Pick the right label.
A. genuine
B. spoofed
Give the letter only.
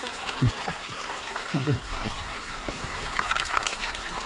B